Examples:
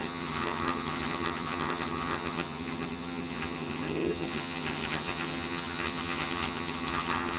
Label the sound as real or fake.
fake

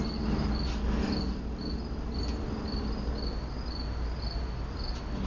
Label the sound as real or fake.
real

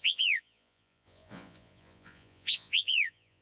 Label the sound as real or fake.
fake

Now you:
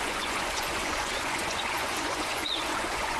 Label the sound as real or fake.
fake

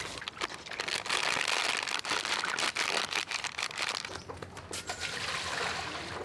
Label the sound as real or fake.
real